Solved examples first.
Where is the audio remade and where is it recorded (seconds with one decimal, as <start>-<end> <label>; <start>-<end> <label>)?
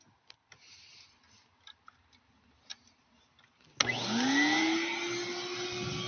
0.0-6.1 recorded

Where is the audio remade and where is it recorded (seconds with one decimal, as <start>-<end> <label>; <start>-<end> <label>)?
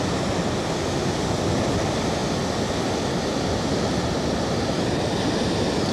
0.0-5.9 recorded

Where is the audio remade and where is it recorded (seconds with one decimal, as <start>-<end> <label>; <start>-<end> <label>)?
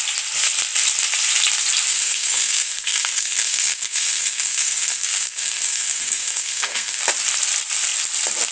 0.0-1.9 recorded; 1.9-7.0 remade; 7.0-8.5 recorded